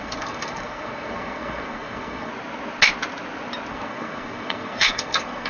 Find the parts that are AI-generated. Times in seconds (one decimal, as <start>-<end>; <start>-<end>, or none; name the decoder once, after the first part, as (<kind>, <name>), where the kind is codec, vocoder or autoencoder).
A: 0.0-2.3 (codec, SNAC); 3.7-5.5